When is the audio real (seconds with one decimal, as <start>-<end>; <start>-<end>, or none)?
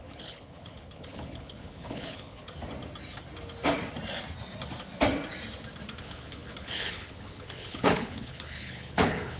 2.4-6.0